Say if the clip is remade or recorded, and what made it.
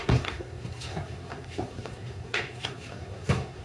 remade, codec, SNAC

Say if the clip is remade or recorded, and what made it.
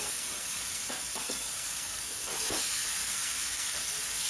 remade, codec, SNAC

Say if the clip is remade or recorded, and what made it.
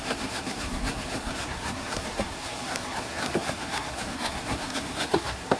remade, codec, SNAC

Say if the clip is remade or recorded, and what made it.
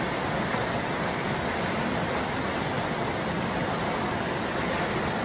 recorded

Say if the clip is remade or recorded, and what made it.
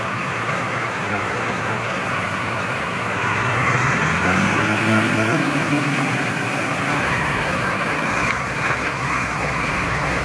remade, codec, SNAC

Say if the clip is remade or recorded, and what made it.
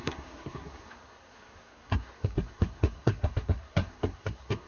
remade, codec, SNAC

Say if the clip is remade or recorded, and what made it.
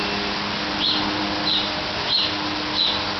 recorded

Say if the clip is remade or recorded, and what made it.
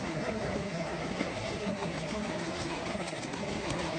remade, codec, SNAC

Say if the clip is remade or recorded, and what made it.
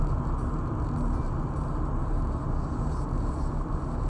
recorded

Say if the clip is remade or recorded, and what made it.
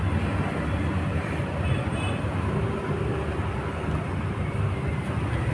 recorded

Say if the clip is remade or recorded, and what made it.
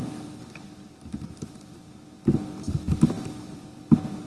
recorded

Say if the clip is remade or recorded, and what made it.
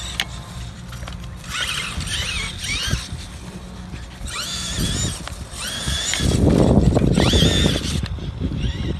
recorded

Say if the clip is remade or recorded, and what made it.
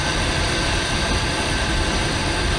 recorded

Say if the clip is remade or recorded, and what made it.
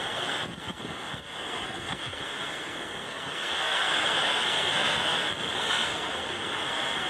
remade, codec, SNAC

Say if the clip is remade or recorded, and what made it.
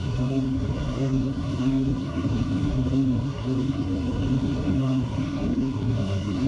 remade, codec, SNAC